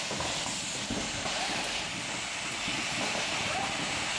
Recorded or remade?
recorded